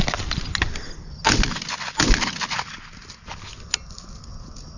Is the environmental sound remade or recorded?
recorded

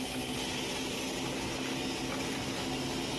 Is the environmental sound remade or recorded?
recorded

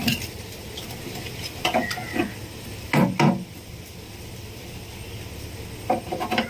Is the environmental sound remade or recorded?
recorded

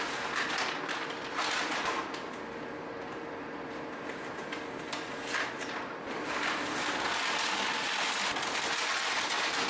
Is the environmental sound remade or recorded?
recorded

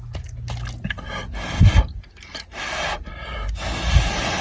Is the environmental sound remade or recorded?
recorded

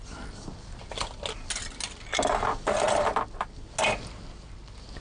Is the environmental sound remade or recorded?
recorded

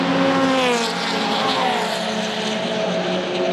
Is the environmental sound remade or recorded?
recorded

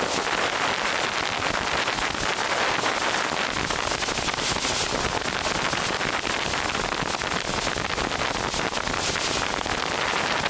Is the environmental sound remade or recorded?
recorded